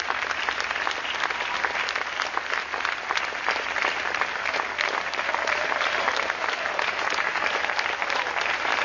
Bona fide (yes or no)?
yes